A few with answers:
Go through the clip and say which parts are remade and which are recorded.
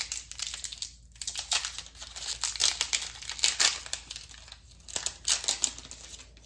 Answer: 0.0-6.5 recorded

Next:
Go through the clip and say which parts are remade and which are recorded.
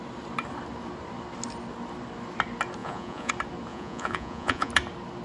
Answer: 0.0-2.8 recorded; 2.8-3.3 remade; 3.3-3.7 recorded; 3.7-4.7 remade; 4.7-5.2 recorded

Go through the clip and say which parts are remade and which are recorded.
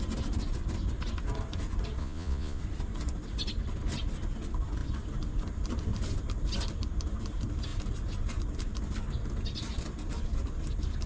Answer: 0.0-2.0 recorded; 2.0-2.6 remade; 2.6-11.1 recorded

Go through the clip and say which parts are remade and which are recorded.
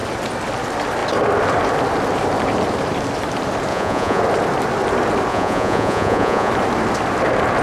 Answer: 0.0-3.7 recorded; 3.7-4.2 remade; 4.2-5.3 recorded; 5.3-6.5 remade; 6.5-7.6 recorded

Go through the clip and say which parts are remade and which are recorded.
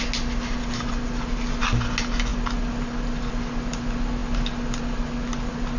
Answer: 0.0-5.8 recorded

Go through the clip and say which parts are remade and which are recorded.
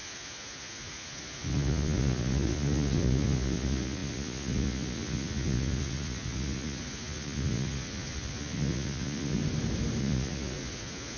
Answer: 0.0-9.4 remade; 9.4-10.0 recorded; 10.0-11.2 remade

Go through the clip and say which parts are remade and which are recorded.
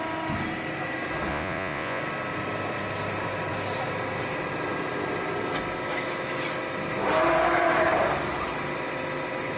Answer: 0.0-1.3 recorded; 1.3-2.0 remade; 2.0-9.6 recorded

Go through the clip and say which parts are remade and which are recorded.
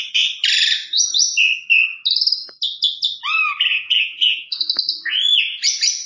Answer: 0.0-3.7 recorded; 3.7-4.6 remade; 4.6-6.1 recorded